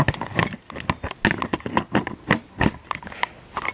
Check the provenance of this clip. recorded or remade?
recorded